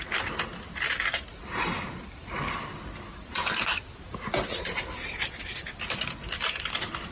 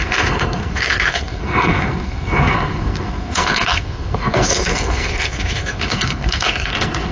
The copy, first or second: second